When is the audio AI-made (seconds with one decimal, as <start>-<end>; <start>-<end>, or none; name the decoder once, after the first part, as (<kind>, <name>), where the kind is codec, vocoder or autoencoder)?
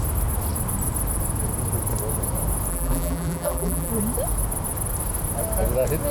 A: 2.7-3.9 (vocoder, BigVGAN v2)